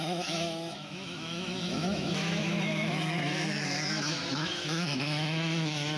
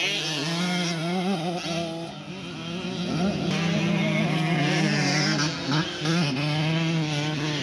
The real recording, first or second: second